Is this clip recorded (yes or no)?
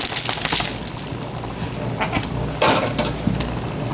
yes